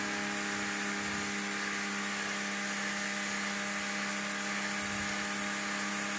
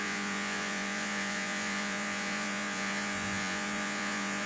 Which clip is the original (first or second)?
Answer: first